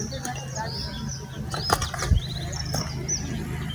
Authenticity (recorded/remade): recorded